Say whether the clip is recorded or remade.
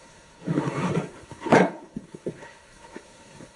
remade